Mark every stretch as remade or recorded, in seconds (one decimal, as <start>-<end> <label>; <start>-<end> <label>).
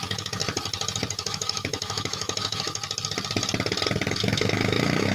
0.0-0.4 remade; 0.4-1.1 recorded; 1.1-2.8 remade; 2.8-4.1 recorded; 4.1-5.1 remade